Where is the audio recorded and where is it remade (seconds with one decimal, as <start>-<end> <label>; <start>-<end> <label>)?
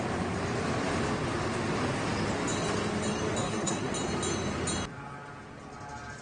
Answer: 0.0-3.4 recorded; 3.4-3.9 remade; 3.9-6.2 recorded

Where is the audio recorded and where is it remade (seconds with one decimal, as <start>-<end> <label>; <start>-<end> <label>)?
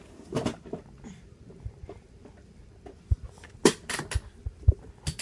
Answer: 0.0-5.2 recorded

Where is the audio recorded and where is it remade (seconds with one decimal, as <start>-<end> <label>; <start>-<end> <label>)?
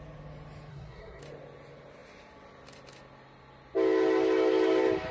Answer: 0.0-0.7 recorded; 0.7-1.2 remade; 1.2-5.1 recorded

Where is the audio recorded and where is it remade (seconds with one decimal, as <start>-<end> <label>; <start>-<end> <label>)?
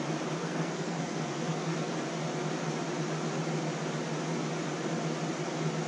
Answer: 0.0-0.4 recorded; 0.4-1.9 remade; 1.9-5.9 recorded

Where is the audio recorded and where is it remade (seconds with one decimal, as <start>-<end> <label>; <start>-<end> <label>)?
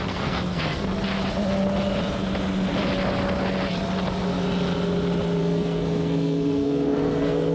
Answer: 0.0-0.9 remade; 0.9-5.4 recorded; 5.4-7.5 remade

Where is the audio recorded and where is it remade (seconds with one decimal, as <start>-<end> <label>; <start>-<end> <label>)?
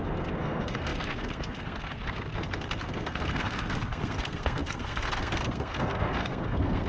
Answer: 0.0-6.9 remade